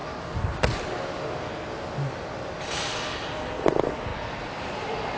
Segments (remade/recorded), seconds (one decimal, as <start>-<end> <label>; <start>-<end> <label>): 0.0-5.2 recorded